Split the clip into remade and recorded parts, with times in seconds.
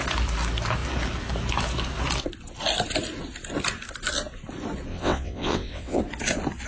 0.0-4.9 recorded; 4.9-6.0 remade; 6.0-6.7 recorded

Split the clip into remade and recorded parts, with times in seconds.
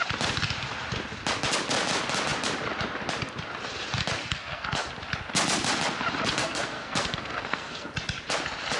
0.0-4.2 recorded; 4.2-4.9 remade; 4.9-6.4 recorded; 6.4-7.9 remade; 7.9-8.8 recorded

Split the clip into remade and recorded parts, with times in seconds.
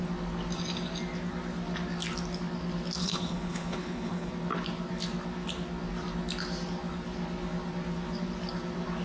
0.0-3.0 recorded; 3.0-4.3 remade; 4.3-9.0 recorded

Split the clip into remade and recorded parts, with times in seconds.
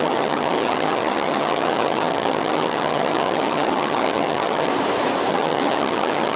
0.0-4.7 remade; 4.7-5.3 recorded; 5.3-6.4 remade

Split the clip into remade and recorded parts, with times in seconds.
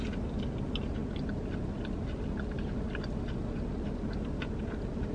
0.0-5.1 recorded